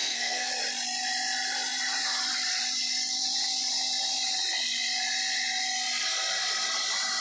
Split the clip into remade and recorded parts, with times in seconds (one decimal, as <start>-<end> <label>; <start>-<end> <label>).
0.0-0.5 remade; 0.5-7.2 recorded